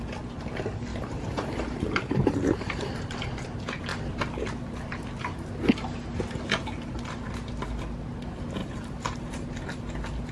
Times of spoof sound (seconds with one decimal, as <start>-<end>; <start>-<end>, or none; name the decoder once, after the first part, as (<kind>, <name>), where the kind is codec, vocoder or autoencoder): 0.9-2.9 (vocoder, BigVGAN v2); 8.6-9.8